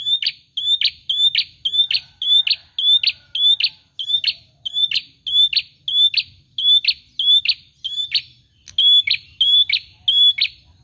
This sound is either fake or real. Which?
real